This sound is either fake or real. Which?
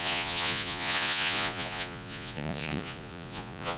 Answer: fake